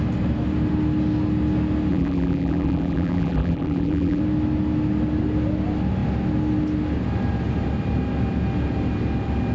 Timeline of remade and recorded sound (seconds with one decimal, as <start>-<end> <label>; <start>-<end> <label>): 0.0-1.9 recorded; 1.9-4.2 remade; 4.2-9.5 recorded